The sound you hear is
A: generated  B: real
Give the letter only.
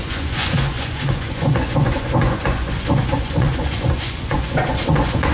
A